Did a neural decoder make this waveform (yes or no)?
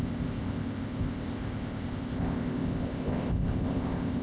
yes